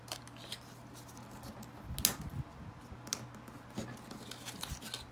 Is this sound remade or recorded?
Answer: recorded